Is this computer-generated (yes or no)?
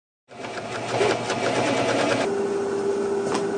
no